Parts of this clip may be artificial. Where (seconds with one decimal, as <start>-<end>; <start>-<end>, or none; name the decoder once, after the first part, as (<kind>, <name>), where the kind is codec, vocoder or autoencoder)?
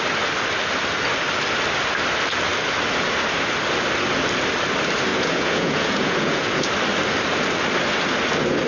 5.1-6.7 (vocoder, Vocos)